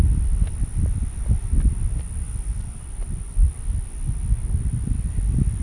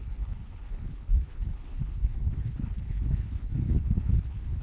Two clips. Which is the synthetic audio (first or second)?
second